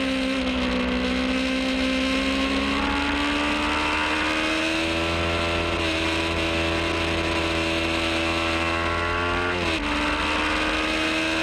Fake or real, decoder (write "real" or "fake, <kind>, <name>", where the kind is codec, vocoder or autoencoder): real